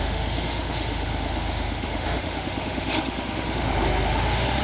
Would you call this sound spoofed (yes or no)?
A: yes